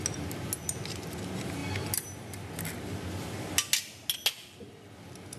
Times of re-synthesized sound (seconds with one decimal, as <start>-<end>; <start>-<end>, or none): none